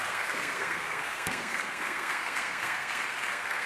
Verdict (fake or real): fake